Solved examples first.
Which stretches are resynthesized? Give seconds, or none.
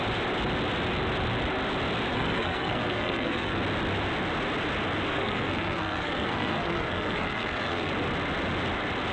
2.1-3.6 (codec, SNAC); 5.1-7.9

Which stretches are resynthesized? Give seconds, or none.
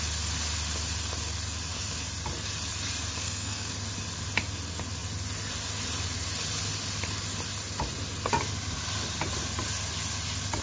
3.2-3.7 (codec, SNAC)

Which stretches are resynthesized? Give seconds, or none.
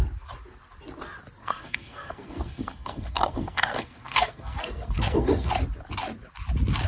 1.4-5.5 (codec, SNAC)